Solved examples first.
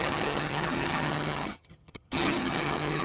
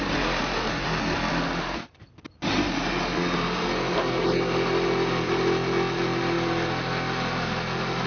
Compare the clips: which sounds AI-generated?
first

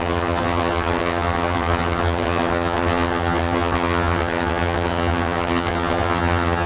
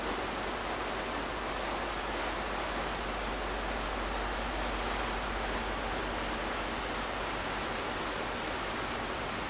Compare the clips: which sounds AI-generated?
first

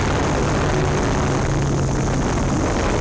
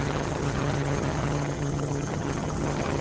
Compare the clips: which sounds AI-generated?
second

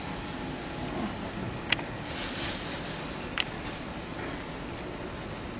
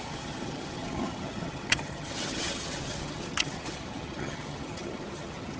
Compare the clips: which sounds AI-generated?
second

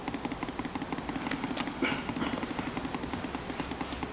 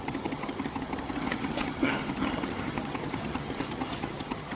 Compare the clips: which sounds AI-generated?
second